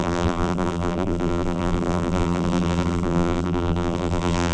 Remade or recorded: remade